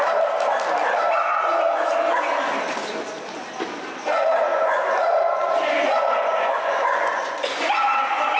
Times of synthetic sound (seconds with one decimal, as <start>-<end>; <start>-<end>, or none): 4.5-8.4